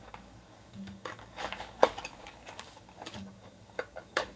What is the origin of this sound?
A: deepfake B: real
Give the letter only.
A